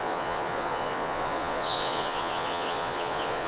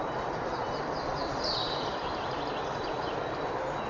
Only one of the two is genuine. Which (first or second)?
second